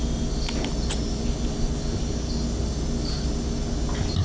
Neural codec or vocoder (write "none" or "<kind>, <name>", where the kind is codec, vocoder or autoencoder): none